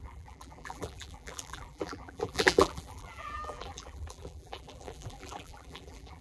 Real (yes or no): no